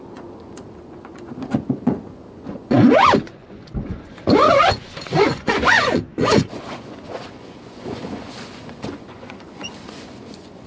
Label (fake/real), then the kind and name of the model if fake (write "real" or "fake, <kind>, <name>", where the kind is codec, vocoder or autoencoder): fake, vocoder, Vocos